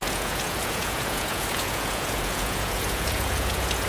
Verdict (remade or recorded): remade